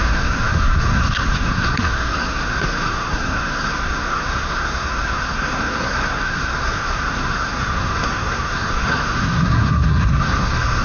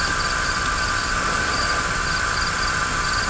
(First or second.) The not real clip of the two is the first